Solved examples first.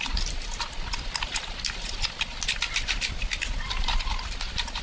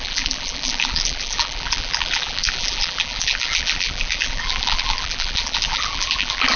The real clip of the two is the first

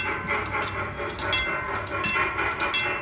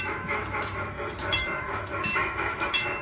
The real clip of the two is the first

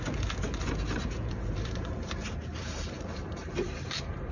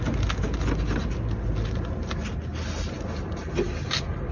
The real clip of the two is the second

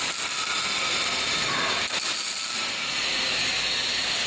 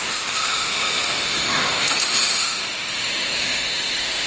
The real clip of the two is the first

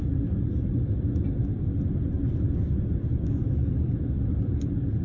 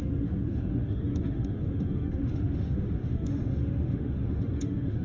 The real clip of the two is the first